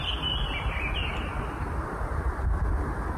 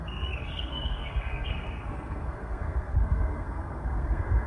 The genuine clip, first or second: first